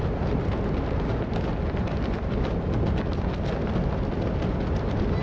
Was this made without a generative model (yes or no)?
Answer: yes